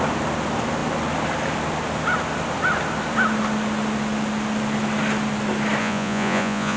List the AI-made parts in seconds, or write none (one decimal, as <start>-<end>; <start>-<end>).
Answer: 5.8-6.8